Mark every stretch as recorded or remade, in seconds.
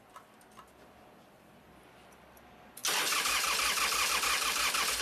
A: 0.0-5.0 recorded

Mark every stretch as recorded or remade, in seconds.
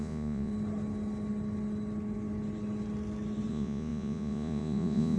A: 0.0-0.5 remade; 0.5-3.5 recorded; 3.5-5.2 remade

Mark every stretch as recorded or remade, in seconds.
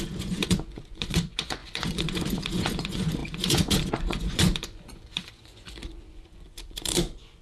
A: 0.0-7.4 remade